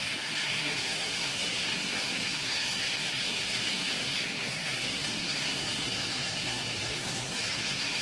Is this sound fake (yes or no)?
yes